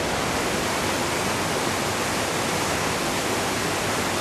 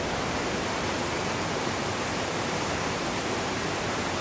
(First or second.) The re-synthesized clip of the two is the second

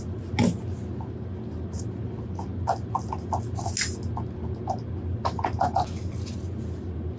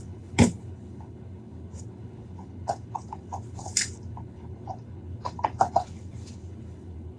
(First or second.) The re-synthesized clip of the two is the second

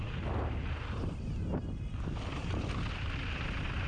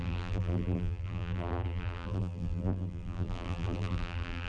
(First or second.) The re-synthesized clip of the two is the second